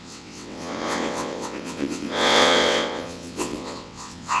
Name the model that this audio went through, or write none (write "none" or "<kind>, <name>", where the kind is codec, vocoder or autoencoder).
vocoder, WaveNeXt